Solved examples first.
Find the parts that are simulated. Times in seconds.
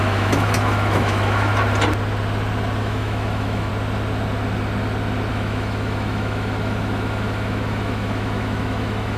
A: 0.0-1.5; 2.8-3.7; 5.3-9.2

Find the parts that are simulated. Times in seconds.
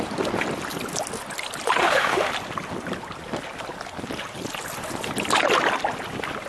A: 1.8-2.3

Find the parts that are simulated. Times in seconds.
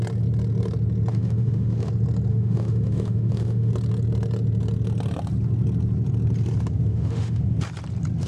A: 1.1-1.9; 2.3-3.7; 6.9-7.4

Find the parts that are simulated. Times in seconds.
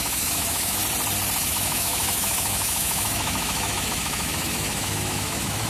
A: 0.0-0.8; 1.4-5.7